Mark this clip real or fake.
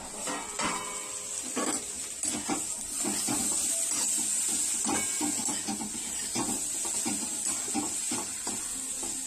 real